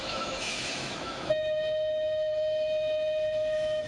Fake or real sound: fake